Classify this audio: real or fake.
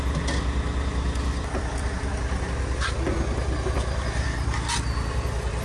real